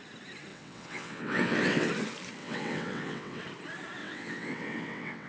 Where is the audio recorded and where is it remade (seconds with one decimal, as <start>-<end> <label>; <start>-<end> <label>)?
0.0-0.5 recorded; 0.5-1.9 remade; 1.9-2.4 recorded; 2.4-3.4 remade; 3.4-4.0 recorded; 4.0-5.3 remade